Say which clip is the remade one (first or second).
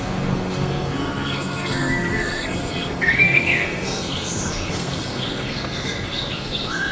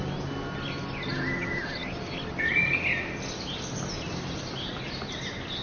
first